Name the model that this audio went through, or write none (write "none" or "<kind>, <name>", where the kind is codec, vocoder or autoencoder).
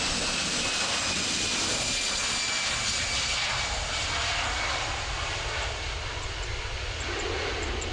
none